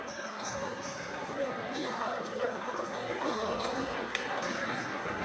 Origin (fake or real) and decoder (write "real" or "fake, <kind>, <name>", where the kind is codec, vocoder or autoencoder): fake, codec, SNAC